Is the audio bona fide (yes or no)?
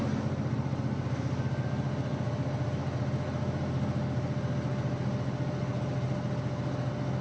yes